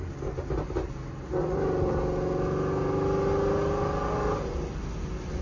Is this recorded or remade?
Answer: recorded